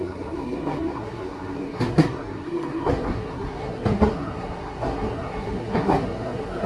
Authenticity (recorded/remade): remade